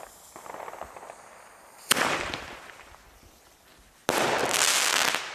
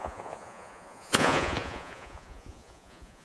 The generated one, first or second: second